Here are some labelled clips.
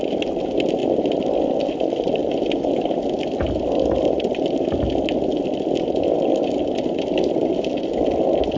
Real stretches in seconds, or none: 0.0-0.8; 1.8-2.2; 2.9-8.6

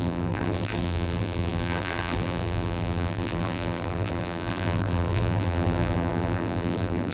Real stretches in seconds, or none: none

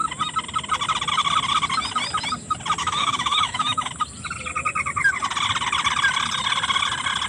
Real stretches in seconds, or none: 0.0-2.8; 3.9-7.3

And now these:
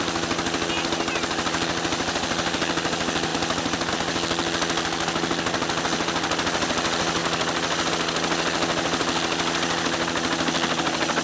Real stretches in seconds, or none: 0.0-11.2

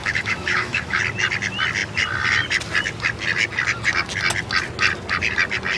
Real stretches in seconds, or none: 1.0-5.8

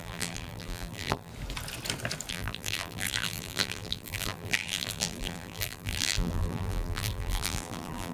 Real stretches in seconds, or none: 1.3-2.3

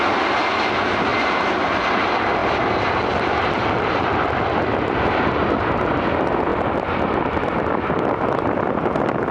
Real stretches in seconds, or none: 0.0-1.1; 1.7-2.4; 5.1-6.5; 8.0-9.3

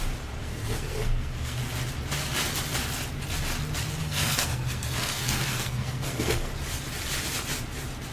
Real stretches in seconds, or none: 0.0-0.4; 1.6-4.0; 6.5-8.1